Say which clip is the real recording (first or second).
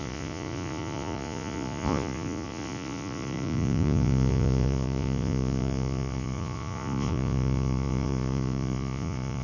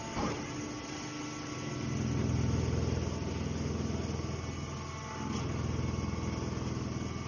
second